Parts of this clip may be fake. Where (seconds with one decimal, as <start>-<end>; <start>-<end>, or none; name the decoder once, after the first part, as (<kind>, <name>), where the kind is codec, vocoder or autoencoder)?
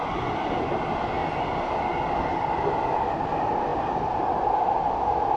none